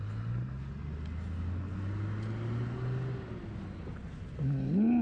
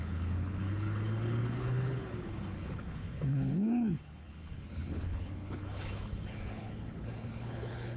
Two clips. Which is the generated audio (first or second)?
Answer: second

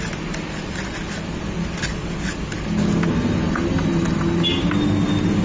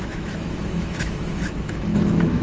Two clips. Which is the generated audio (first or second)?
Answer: second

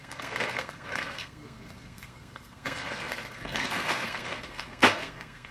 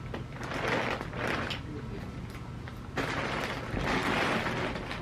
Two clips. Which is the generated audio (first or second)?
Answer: first